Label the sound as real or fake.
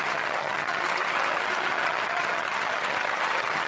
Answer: fake